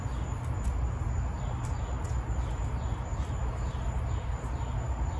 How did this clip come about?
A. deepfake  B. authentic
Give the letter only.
B